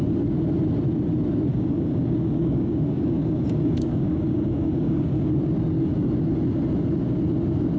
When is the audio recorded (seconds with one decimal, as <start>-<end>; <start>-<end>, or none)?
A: 0.0-1.5; 5.4-7.8